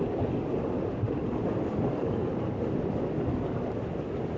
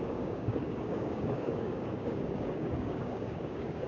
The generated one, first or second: second